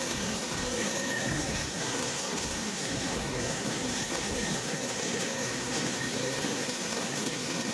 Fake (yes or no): yes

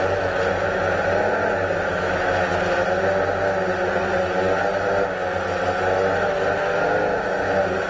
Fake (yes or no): no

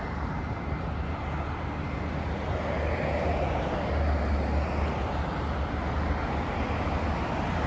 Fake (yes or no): no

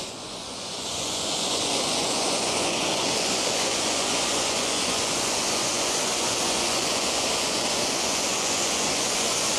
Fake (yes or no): yes